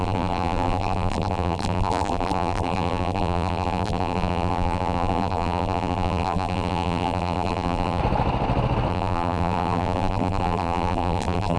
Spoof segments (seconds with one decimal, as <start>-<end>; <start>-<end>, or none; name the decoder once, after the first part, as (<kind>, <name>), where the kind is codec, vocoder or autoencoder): 0.0-8.0 (vocoder, BigVGAN v2); 8.9-11.6